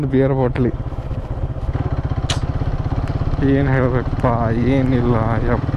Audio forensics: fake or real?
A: real